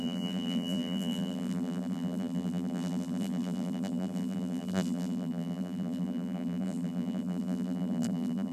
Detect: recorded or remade remade